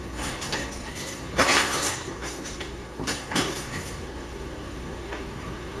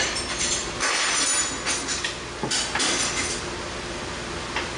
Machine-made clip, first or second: first